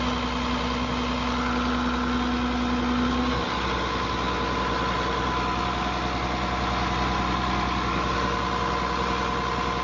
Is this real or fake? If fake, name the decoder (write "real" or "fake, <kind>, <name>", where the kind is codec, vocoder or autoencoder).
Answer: real